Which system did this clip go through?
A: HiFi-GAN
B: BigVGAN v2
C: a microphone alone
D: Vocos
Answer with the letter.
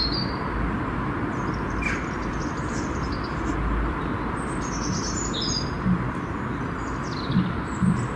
B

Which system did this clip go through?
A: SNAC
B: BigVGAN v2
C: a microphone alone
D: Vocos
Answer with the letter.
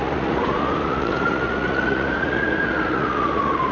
D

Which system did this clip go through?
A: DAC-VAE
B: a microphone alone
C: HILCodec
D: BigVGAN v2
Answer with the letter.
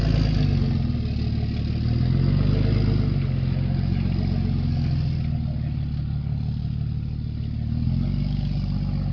B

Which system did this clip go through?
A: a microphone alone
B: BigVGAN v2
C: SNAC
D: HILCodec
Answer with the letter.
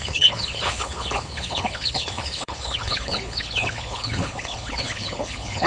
D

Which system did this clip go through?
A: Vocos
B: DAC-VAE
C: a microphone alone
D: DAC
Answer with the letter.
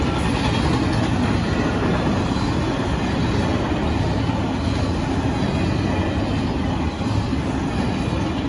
C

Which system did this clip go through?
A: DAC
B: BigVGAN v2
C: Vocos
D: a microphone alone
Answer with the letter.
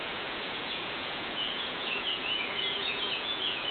C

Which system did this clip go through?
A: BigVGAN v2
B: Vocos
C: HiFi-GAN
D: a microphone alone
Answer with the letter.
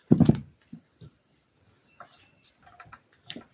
A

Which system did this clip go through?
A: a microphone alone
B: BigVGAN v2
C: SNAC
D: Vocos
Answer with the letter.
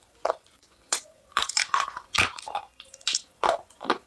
D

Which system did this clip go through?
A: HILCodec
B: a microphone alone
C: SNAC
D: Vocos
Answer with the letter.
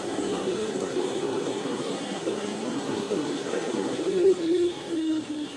C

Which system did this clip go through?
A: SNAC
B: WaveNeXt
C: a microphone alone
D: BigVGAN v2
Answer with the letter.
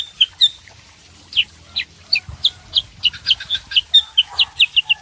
C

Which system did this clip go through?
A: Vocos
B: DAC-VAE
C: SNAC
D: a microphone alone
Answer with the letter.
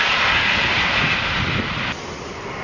D